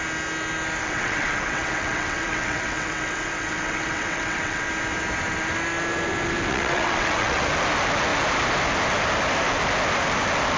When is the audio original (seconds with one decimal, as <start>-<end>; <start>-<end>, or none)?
0.0-0.8; 4.7-6.5; 7.5-10.6